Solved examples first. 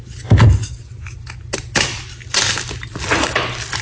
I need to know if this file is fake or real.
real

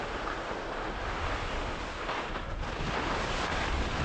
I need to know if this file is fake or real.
real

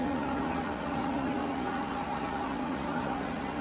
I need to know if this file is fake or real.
fake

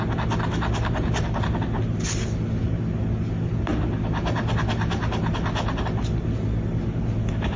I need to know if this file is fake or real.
real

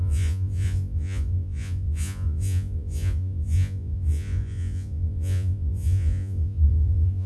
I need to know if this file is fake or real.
fake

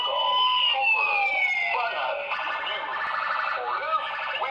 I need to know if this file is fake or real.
real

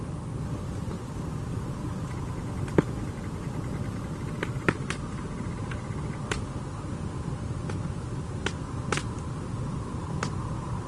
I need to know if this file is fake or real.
real